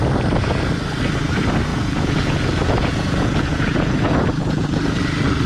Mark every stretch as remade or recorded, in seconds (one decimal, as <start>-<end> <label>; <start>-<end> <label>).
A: 0.0-1.7 recorded; 1.7-5.0 remade; 5.0-5.5 recorded